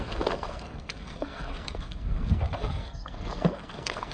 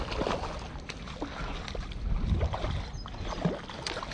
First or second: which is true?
second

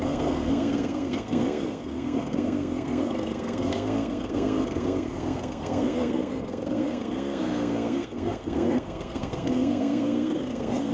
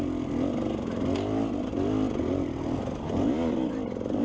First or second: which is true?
second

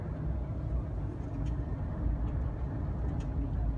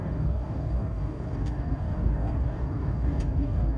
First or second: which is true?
first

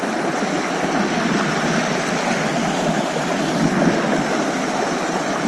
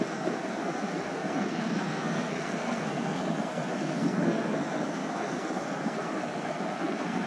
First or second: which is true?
first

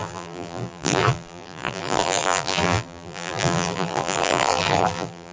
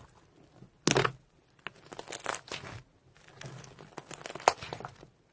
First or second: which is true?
second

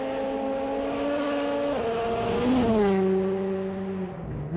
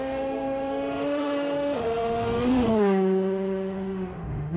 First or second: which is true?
first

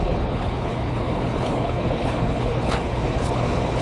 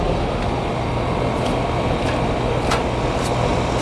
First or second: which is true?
second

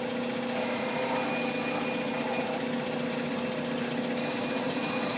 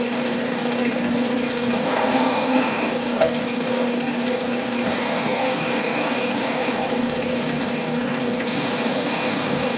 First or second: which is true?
first